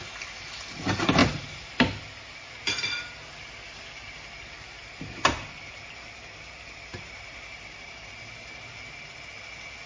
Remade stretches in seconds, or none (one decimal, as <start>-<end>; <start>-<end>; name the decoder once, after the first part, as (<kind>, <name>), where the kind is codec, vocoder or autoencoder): 1.2-2.0 (vocoder, BigVGAN v2); 6.9-8.7